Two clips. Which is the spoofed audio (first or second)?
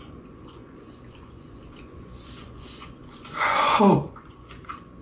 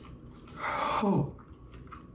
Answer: first